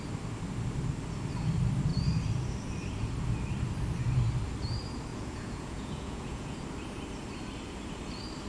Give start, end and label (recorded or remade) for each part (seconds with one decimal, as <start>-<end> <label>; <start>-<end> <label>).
0.0-5.1 recorded; 5.1-6.6 remade; 6.6-8.5 recorded